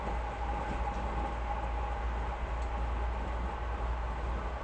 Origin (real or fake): real